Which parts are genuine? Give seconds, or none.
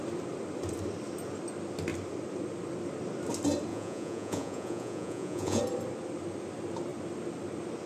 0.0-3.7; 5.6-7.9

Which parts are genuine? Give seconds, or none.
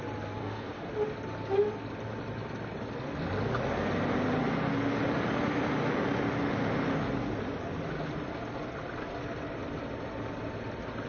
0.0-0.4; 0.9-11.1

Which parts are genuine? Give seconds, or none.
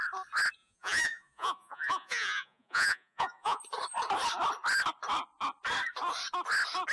0.0-0.6; 3.6-6.9